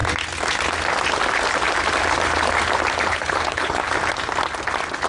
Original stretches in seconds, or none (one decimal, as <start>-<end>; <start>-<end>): 0.0-3.1; 3.8-5.1